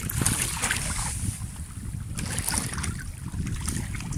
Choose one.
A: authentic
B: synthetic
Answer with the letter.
A